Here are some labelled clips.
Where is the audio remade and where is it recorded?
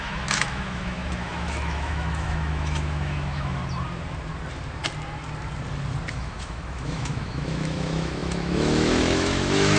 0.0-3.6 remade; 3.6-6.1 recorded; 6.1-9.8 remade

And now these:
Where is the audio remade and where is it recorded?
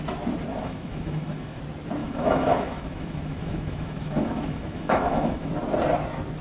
0.0-0.5 recorded; 0.5-1.6 remade; 1.6-2.0 recorded; 2.0-5.5 remade; 5.5-6.4 recorded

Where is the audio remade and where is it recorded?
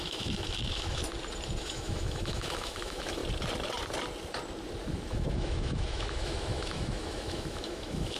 0.0-1.0 remade; 1.0-1.6 recorded; 1.6-3.2 remade; 3.2-5.1 recorded; 5.1-8.2 remade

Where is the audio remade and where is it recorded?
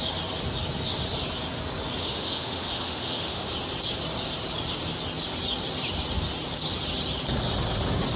0.0-2.0 recorded; 2.0-3.5 remade; 3.5-8.2 recorded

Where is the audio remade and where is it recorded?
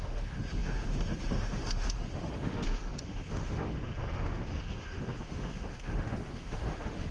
0.0-7.1 remade